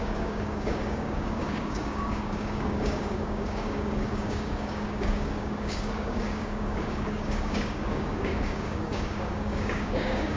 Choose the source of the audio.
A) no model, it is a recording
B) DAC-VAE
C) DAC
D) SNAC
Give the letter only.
C